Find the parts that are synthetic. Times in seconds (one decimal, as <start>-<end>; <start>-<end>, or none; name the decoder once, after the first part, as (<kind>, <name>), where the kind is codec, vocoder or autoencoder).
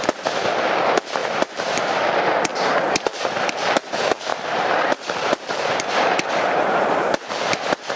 1.2-2.0 (vocoder, BigVGAN v2); 2.5-3.5; 4.3-8.0